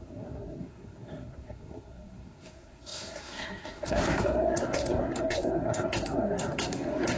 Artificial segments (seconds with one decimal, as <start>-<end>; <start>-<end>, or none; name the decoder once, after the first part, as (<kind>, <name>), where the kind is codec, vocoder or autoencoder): 0.0-7.2 (codec, SNAC)